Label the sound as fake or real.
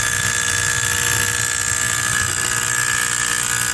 real